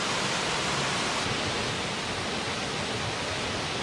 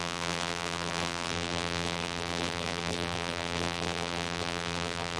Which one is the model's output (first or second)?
second